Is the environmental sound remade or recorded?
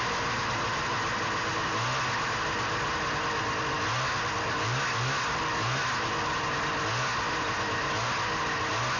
recorded